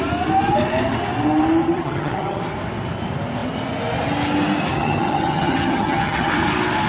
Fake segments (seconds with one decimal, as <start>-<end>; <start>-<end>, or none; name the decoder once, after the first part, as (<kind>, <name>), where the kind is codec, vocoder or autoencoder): 1.6-2.4 (vocoder, HiFi-GAN); 4.7-6.3